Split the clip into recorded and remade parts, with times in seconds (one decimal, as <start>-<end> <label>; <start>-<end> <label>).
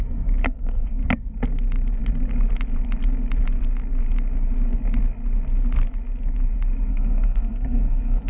0.0-0.4 recorded; 0.4-1.0 remade; 1.0-6.9 recorded; 6.9-8.3 remade